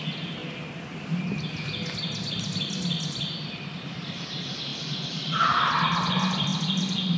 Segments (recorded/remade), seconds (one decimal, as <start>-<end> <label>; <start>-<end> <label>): 0.0-7.2 recorded